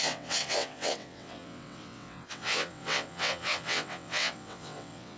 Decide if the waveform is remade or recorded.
remade